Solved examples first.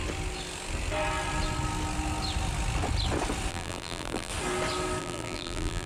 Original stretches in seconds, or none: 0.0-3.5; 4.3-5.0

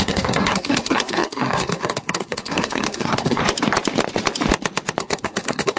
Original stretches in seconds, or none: 3.4-5.0

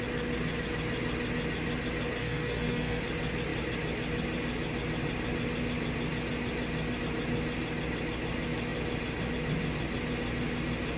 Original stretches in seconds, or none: 0.0-2.2; 3.0-11.0

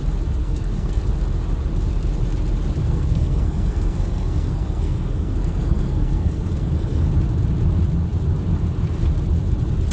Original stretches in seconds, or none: 0.0-0.4; 1.0-2.8; 7.1-9.9

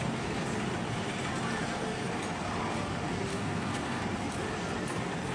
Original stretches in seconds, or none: 0.0-3.3; 4.0-5.3